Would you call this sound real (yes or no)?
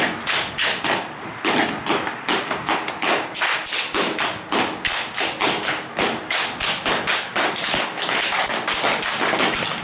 yes